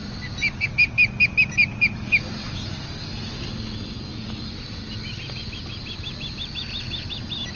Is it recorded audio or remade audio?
recorded